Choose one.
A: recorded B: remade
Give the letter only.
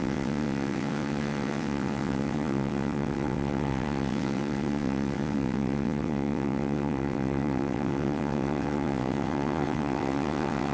B